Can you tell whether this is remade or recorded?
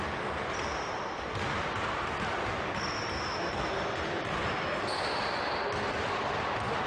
recorded